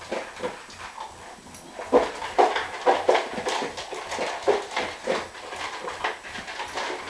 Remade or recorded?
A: recorded